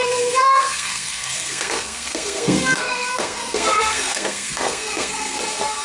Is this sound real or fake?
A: fake